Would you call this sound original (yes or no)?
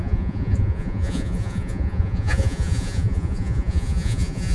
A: no